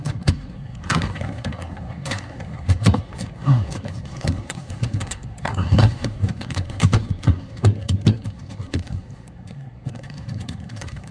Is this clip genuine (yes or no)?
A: no